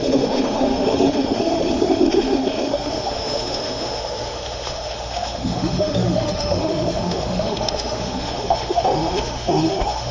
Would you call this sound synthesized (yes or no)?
yes